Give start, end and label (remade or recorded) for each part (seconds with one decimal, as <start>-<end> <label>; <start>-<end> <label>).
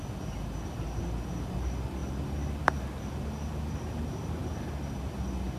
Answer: 0.0-5.6 recorded